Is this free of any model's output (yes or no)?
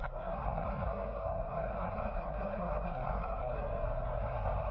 no